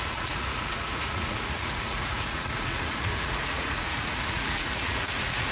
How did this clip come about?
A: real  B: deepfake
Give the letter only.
B